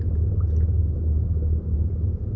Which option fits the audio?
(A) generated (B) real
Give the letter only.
B